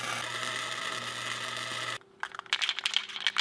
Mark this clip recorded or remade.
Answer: recorded